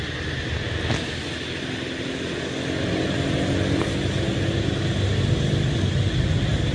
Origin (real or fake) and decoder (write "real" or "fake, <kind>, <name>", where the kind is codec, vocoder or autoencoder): real